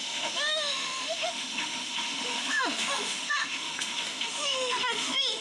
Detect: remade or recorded remade